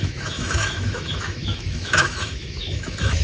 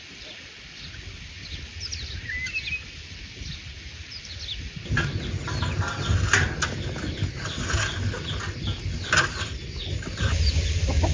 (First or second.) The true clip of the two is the second